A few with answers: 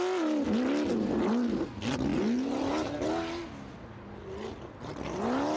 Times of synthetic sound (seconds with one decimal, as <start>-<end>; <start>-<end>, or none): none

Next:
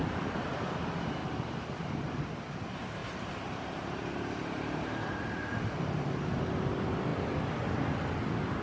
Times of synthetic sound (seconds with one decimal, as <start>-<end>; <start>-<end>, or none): 1.2-2.1; 3.0-6.4

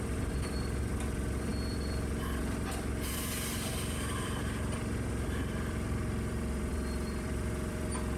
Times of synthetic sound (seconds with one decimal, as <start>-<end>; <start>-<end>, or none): 0.0-1.5; 2.4-8.2